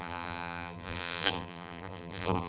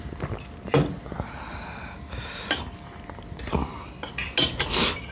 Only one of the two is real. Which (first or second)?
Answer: second